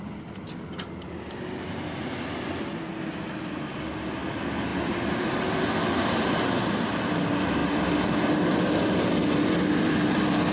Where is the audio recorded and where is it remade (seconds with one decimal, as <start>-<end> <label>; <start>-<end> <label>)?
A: 0.0-10.5 recorded